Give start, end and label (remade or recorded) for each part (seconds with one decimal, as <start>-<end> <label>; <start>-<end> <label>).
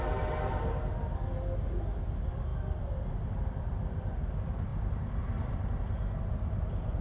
0.0-7.0 recorded